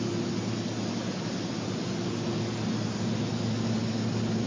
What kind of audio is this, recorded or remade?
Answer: recorded